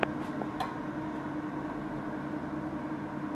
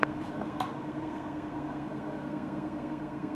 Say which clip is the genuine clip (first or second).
first